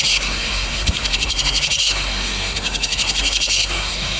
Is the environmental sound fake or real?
fake